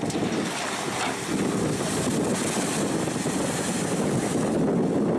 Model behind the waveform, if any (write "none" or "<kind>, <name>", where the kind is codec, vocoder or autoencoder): none